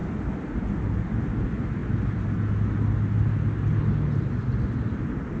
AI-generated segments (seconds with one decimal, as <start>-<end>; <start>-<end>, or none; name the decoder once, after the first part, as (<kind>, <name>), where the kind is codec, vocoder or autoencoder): none